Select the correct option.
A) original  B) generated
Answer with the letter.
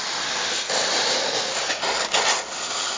A